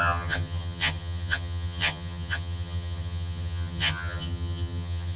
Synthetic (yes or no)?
yes